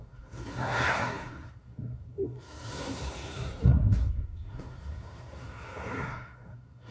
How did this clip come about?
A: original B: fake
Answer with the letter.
B